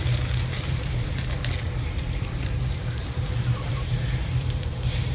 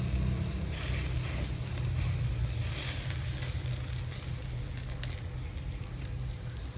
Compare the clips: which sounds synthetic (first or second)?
first